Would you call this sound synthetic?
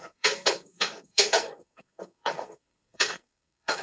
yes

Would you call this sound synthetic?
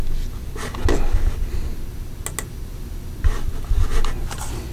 no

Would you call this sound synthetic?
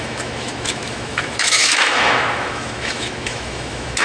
yes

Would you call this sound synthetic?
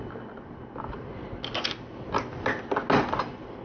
no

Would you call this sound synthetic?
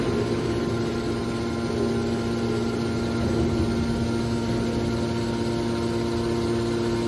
no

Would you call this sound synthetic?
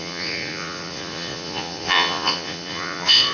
yes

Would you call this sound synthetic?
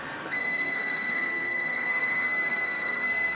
yes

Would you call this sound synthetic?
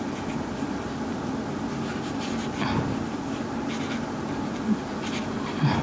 no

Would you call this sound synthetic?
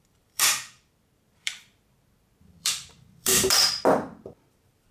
yes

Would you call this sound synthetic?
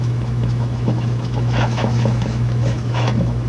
yes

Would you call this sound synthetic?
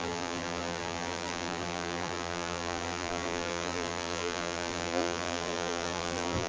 yes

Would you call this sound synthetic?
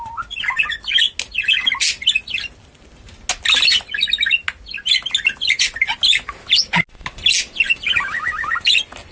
no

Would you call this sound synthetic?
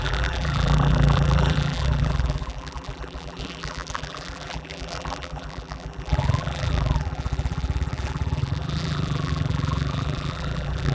yes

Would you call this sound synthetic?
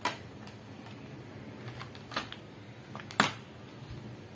no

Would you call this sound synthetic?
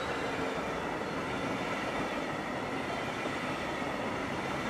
no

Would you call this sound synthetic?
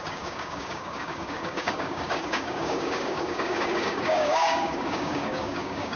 yes